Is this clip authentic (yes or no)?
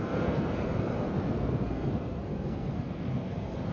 no